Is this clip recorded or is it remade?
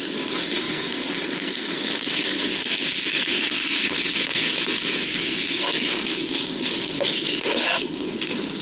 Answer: remade